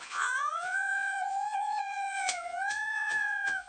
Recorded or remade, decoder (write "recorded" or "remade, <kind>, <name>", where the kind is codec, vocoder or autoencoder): remade, vocoder, Vocos